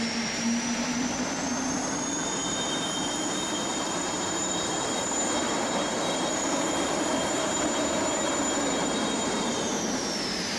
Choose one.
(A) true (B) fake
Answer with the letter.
B